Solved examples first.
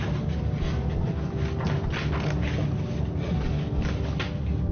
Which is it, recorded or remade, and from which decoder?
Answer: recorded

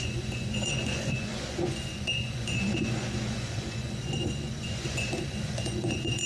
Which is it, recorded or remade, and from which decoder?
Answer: remade, vocoder, Vocos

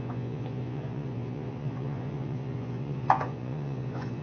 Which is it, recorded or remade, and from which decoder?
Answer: remade, vocoder, Vocos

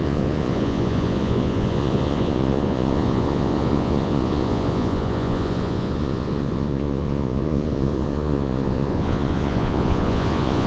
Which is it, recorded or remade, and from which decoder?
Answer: remade, vocoder, Vocos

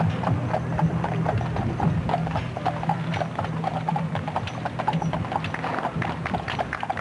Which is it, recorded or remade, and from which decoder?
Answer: recorded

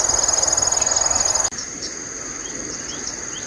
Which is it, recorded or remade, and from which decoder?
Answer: recorded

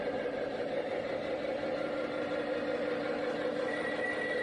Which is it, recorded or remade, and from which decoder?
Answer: recorded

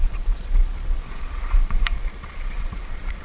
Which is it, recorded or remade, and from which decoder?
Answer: remade, vocoder, Vocos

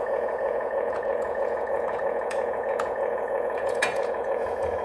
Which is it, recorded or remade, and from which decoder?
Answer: remade, vocoder, Vocos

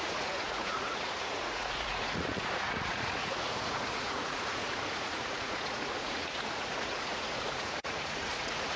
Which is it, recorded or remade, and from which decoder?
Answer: remade, vocoder, Vocos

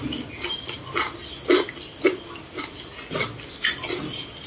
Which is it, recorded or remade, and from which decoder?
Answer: recorded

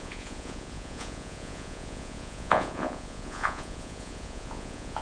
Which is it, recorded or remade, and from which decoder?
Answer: remade, vocoder, Vocos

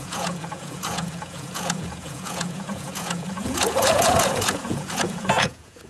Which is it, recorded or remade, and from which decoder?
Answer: remade, vocoder, Vocos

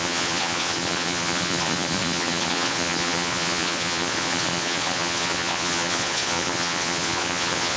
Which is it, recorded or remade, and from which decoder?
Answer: remade, vocoder, Vocos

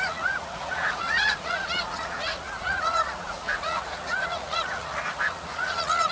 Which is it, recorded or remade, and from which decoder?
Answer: remade, vocoder, Vocos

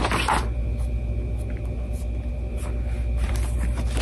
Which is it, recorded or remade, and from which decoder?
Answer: recorded